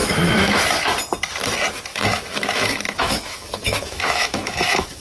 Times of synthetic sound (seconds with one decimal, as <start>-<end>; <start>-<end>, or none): 0.0-0.6; 1.9-5.0